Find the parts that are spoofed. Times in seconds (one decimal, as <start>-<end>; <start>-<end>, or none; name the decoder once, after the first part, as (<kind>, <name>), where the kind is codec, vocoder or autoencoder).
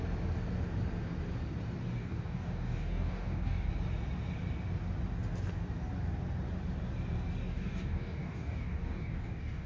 2.0-3.7 (codec, DAC); 7.5-9.7